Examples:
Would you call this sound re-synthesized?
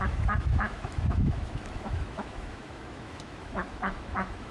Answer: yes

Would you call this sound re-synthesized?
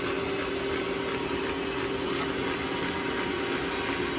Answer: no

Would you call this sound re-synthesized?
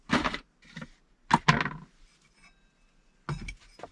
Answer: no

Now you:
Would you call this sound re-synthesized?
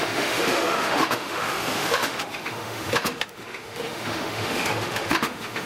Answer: yes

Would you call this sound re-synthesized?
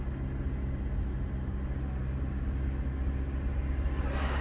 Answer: no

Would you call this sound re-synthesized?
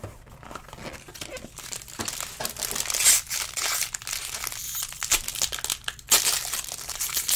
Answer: no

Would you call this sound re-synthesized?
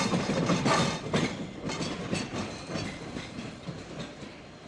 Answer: no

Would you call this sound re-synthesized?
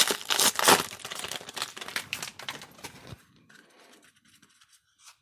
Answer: no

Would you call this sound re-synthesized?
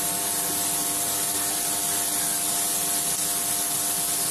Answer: no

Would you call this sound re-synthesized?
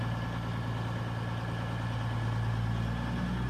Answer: no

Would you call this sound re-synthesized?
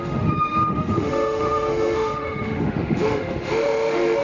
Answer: yes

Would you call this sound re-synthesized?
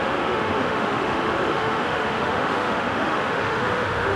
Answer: yes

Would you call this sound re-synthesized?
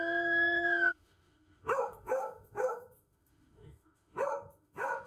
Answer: yes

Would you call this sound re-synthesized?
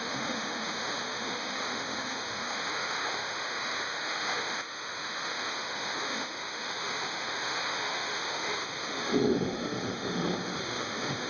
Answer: yes